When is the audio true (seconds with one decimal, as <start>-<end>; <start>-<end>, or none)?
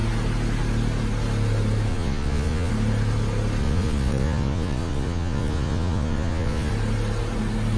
0.0-1.9; 2.7-3.6; 6.7-7.8